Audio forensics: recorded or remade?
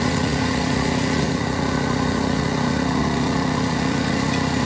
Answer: remade